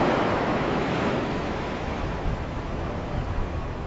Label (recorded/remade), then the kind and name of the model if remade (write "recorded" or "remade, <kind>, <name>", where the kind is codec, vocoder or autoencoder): remade, autoencoder, DAC-VAE